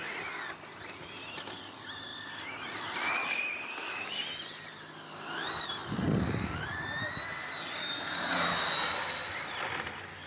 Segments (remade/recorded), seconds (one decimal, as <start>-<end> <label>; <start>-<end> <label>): 0.0-10.3 recorded